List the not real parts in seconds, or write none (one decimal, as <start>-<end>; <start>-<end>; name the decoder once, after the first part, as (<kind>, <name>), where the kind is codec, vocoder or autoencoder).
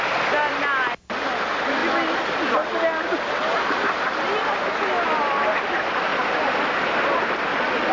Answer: none